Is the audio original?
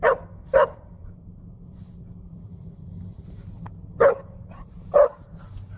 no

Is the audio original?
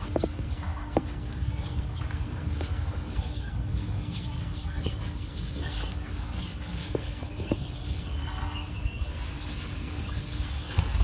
no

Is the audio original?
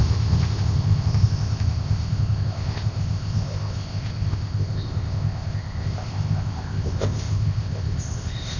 no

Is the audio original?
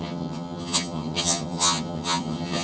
no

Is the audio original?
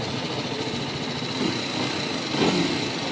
yes